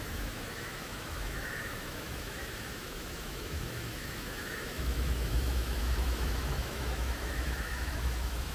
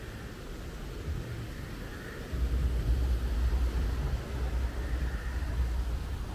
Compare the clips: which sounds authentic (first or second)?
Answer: second